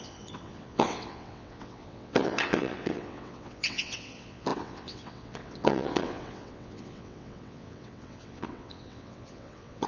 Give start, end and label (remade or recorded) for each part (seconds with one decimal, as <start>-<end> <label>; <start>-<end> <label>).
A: 0.0-9.9 remade